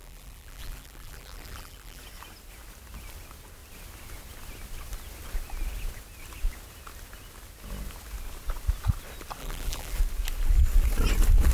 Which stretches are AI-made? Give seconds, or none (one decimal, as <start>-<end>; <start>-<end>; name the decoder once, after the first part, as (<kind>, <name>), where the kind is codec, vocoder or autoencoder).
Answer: 0.0-2.0 (vocoder, BigVGAN v2); 9.4-10.0